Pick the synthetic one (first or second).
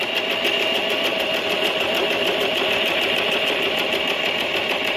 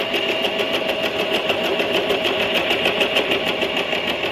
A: first